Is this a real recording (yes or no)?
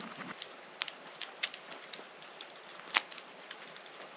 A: yes